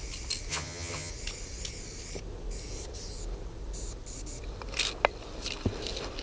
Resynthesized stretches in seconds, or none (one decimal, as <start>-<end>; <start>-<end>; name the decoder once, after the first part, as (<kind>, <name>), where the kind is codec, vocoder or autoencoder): 0.5-1.1 (vocoder, HiFi-GAN)